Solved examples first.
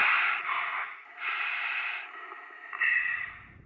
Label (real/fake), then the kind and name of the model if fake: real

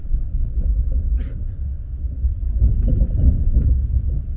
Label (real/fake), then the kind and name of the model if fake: real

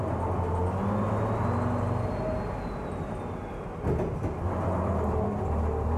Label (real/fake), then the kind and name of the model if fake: real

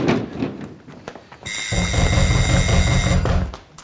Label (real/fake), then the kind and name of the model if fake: real